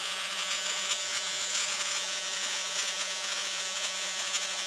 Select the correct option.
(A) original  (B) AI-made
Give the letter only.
B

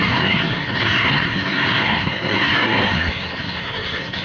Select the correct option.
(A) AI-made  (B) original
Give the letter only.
A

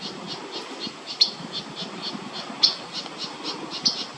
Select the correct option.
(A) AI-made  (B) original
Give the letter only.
B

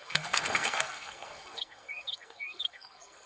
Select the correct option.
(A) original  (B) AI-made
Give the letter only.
B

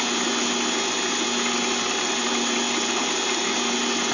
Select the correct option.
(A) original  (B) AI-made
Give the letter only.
A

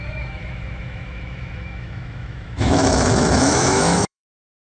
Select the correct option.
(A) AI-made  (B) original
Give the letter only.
A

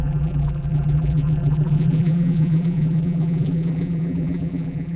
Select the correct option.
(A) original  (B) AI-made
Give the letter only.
B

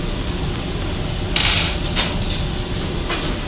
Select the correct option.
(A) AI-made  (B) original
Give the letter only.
B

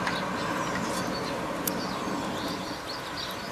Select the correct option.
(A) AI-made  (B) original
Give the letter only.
B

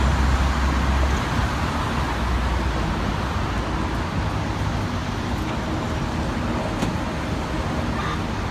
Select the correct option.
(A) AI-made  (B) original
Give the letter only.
B